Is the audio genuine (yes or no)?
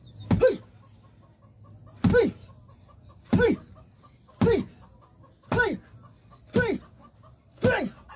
yes